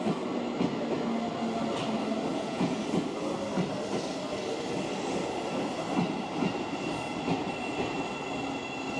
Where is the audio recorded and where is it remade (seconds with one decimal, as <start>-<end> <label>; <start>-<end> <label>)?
0.0-2.3 recorded; 2.3-2.8 remade; 2.8-9.0 recorded

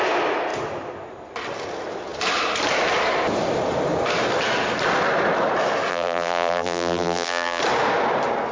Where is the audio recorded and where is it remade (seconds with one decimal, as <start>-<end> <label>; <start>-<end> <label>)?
0.0-5.9 recorded; 5.9-7.6 remade; 7.6-8.5 recorded

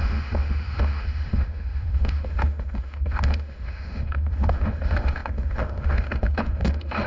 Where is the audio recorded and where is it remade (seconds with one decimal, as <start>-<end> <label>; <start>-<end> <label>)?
0.0-7.1 remade

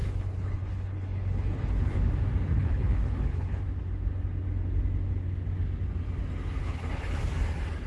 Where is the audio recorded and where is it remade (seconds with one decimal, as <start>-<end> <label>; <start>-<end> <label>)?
0.0-2.1 remade; 2.1-2.5 recorded; 2.5-3.6 remade; 3.6-6.6 recorded; 6.6-7.3 remade; 7.3-7.9 recorded

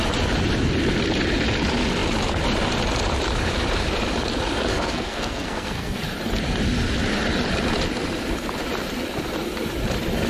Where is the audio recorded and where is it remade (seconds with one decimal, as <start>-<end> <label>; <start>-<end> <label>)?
0.0-4.7 recorded; 4.7-6.0 remade; 6.0-10.3 recorded

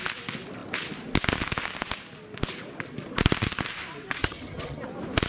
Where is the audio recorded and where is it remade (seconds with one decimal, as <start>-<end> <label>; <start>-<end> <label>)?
0.0-4.2 recorded; 4.2-4.8 remade; 4.8-5.3 recorded

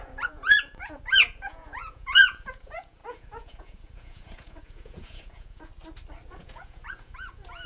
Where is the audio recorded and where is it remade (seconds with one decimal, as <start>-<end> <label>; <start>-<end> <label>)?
0.0-5.7 remade; 5.7-6.3 recorded; 6.3-7.7 remade